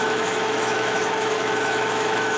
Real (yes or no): no